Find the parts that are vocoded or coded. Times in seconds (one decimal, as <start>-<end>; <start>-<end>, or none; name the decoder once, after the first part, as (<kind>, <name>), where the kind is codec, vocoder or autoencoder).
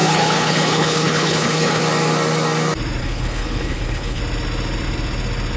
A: 0.0-1.8 (codec, HILCodec); 3.0-4.2